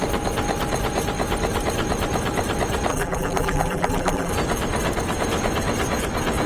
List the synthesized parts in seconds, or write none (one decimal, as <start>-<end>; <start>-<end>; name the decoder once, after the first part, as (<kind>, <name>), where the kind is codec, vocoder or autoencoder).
2.9-4.3 (vocoder, BigVGAN v2)